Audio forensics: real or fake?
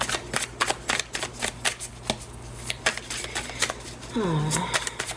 real